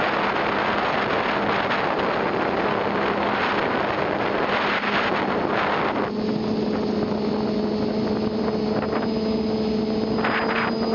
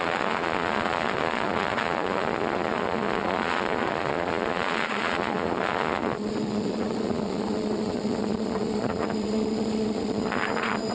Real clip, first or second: first